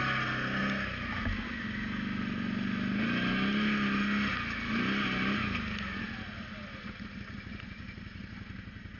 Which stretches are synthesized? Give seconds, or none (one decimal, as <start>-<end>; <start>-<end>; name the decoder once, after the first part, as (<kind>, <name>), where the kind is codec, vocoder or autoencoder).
none